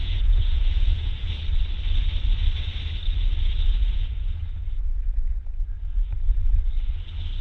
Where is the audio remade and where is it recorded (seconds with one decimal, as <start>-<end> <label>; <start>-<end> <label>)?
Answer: 0.0-1.4 remade; 1.4-3.3 recorded; 3.3-4.8 remade; 4.8-7.4 recorded